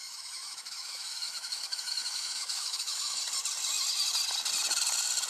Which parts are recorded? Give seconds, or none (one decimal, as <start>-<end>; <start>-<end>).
3.2-5.3